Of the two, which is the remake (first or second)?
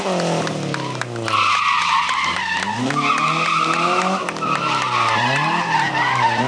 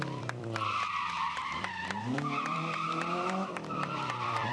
second